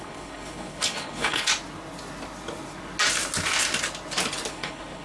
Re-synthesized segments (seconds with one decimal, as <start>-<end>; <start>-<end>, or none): 0.0-1.5; 4.5-5.0